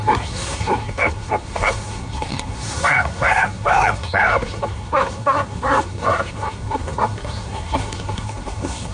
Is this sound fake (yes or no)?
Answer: yes